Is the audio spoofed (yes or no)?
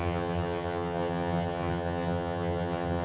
yes